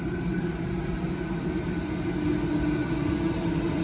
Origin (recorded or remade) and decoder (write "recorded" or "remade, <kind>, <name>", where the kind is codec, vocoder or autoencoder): recorded